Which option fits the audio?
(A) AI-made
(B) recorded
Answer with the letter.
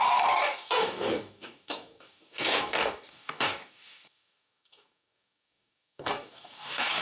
A